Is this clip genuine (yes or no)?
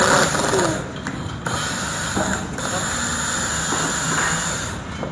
yes